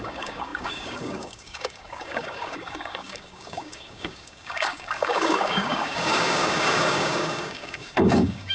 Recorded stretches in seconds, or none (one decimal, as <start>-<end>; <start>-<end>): none